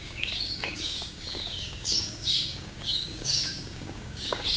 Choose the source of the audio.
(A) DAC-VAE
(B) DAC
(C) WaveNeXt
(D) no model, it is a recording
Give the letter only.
B